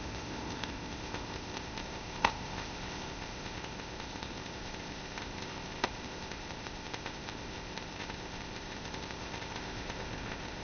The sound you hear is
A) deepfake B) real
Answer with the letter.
A